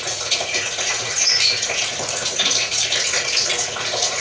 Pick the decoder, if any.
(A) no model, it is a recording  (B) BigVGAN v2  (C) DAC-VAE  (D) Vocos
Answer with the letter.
D